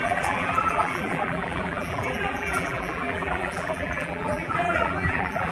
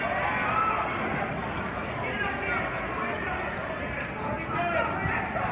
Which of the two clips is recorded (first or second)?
second